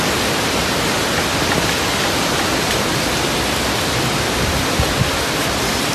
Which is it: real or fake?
real